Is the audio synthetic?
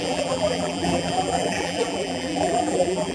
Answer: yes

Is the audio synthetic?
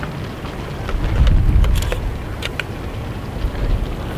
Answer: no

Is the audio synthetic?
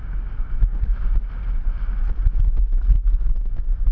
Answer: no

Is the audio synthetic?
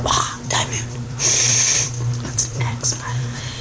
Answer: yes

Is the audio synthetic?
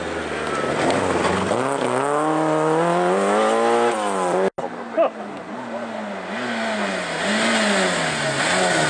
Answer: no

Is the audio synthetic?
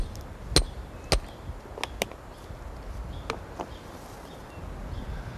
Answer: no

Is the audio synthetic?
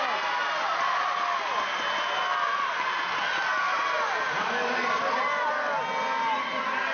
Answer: no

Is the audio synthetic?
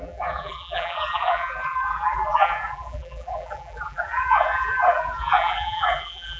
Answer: yes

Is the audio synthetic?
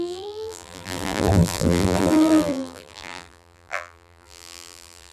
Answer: yes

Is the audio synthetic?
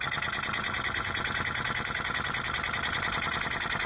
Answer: no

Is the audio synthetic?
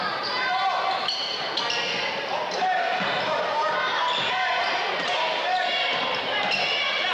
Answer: no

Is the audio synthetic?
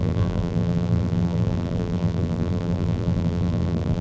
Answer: yes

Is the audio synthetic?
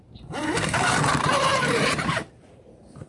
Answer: yes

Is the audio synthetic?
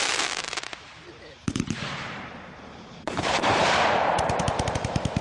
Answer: yes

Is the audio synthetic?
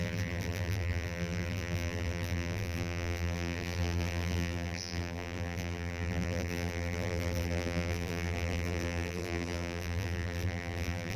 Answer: yes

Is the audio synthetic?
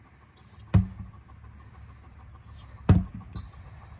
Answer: no